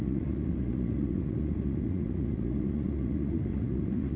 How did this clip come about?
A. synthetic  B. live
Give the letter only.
A